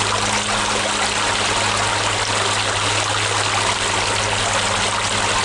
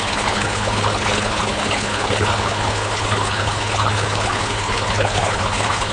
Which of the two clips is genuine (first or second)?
first